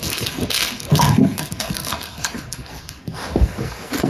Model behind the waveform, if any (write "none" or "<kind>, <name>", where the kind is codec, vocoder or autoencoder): codec, SNAC